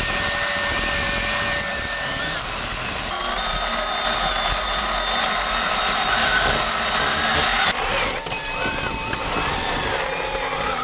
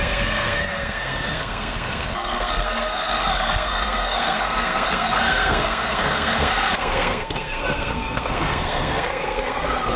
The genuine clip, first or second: first